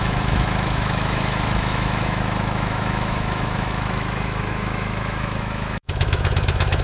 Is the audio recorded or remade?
remade